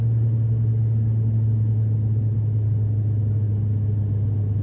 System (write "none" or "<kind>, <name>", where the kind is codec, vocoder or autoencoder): none